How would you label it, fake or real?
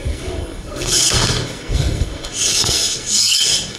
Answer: fake